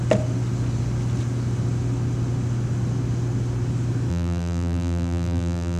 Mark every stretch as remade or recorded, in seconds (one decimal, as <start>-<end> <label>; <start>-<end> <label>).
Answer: 0.0-4.1 recorded; 4.1-5.8 remade